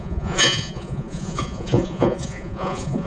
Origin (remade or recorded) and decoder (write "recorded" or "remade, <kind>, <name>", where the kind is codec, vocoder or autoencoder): remade, vocoder, Vocos